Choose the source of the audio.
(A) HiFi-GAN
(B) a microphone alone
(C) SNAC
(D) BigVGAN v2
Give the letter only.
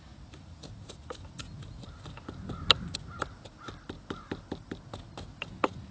B